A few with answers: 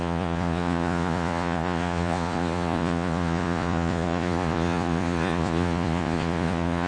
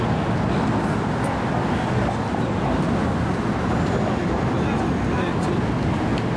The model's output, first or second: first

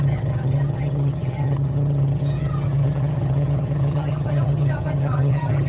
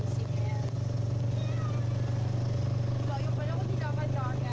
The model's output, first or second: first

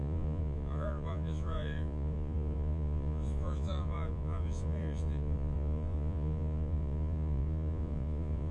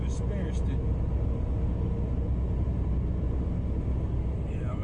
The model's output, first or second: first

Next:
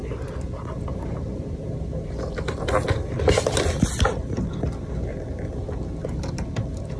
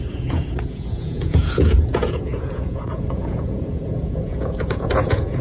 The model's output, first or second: second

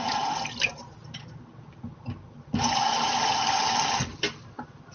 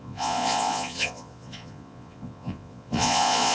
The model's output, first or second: second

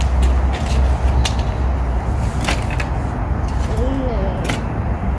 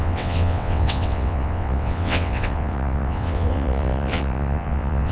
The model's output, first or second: second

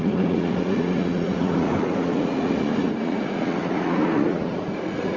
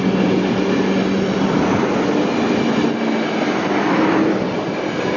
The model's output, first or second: first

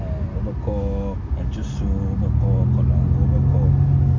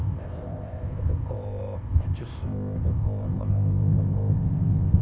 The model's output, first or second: second